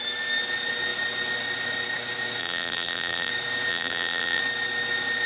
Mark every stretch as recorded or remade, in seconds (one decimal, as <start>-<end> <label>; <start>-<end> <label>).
0.0-2.4 recorded; 2.4-3.3 remade; 3.3-3.7 recorded; 3.7-4.4 remade; 4.4-5.3 recorded